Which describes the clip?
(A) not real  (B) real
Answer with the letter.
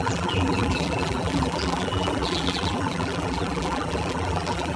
A